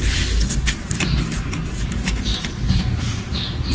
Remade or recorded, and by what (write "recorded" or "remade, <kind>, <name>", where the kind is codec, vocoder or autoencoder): recorded